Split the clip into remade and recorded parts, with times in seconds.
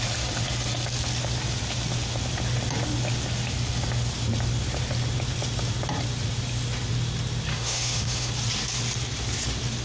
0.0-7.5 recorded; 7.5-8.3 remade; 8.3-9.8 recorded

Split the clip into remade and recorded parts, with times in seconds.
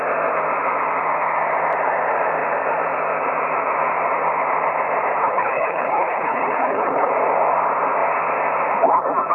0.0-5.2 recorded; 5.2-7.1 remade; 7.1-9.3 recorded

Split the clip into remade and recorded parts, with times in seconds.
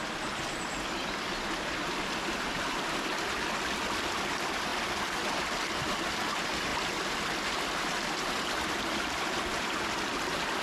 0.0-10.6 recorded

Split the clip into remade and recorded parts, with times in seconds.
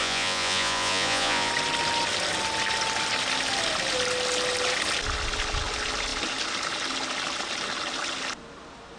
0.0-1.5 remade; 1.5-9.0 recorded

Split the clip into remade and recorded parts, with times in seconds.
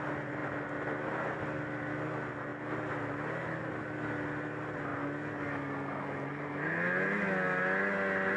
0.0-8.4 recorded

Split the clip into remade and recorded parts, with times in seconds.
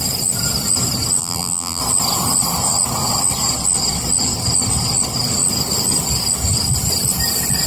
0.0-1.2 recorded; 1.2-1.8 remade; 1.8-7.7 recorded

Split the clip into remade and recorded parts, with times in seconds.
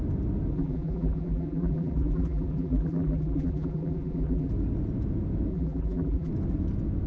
0.0-0.5 recorded; 0.5-4.5 remade; 4.5-5.5 recorded; 5.5-6.3 remade; 6.3-7.1 recorded